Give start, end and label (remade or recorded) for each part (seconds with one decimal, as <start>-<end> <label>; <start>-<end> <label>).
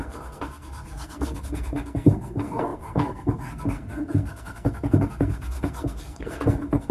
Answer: 0.0-6.9 remade